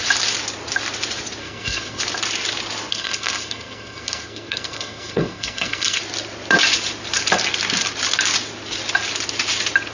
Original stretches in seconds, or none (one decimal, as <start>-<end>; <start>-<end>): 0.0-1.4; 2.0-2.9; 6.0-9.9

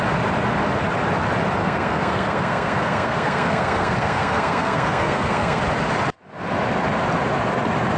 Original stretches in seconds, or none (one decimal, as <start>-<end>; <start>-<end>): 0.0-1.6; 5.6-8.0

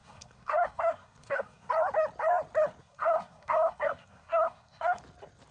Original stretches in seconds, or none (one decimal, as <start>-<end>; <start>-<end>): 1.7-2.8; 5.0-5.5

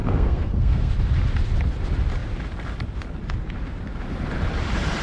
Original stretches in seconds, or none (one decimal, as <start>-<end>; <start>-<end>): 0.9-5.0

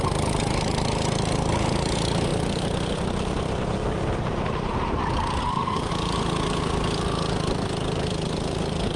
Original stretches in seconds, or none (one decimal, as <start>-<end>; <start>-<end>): 0.0-5.4; 5.9-9.0

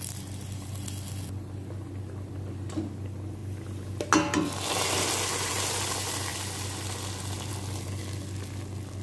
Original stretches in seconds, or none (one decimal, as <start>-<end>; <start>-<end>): 0.0-9.0